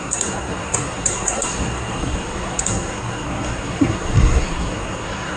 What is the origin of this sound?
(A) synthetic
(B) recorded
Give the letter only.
A